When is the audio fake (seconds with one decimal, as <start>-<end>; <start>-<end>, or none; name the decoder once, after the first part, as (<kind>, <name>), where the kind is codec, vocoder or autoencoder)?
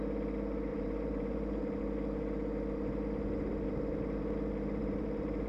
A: 0.7-1.8 (vocoder, BigVGAN v2); 4.8-5.5